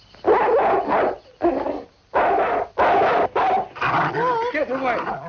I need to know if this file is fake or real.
real